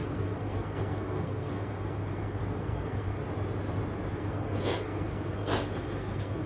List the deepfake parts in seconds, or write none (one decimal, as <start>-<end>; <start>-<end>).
0.0-3.2; 4.1-6.5